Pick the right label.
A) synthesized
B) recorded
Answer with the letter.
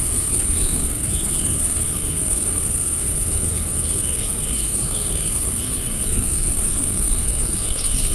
A